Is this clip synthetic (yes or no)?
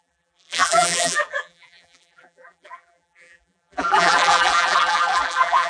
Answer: yes